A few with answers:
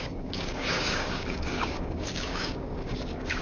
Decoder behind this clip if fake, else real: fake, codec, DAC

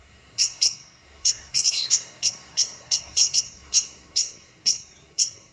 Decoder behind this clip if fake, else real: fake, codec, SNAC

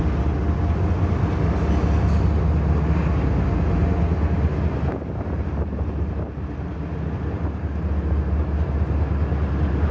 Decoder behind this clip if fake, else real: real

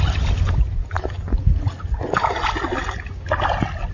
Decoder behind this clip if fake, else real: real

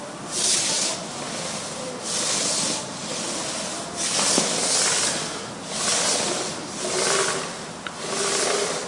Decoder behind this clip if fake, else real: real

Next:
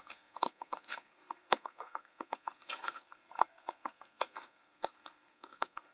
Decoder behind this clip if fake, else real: fake, codec, SNAC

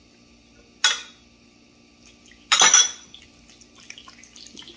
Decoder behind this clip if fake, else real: real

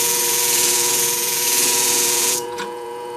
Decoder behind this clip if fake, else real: fake, vocoder, Vocos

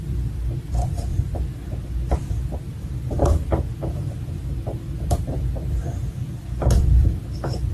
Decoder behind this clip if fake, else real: fake, vocoder, BigVGAN v2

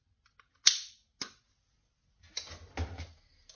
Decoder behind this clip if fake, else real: real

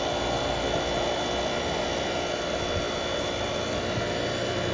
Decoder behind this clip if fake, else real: real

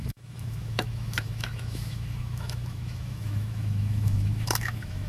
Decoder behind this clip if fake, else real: fake, autoencoder, DAC-VAE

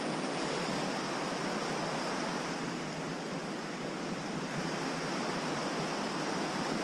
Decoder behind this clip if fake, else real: real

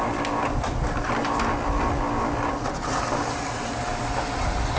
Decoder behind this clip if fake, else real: real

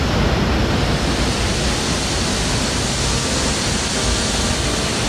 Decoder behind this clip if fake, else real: real